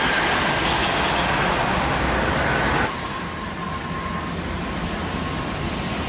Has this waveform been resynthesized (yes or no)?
no